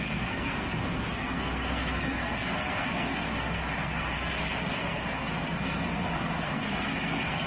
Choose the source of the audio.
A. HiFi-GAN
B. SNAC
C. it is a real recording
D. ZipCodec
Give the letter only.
B